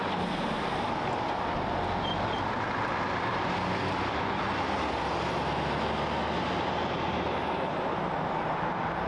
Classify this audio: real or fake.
real